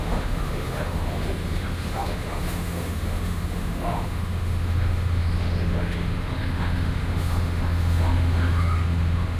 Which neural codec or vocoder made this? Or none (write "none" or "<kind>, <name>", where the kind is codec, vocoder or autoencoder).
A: autoencoder, DAC-VAE